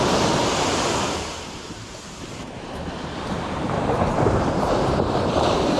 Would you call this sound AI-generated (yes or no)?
yes